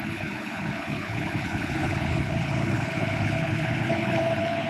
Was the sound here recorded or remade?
remade